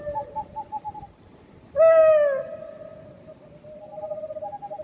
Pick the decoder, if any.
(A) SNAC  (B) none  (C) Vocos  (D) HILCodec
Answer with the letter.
B